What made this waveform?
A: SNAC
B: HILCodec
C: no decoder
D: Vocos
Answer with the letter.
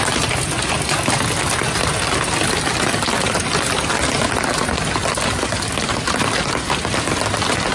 C